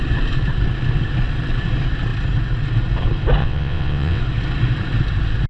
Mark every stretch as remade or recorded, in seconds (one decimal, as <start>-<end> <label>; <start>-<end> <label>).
0.0-3.4 recorded; 3.4-4.2 remade; 4.2-5.5 recorded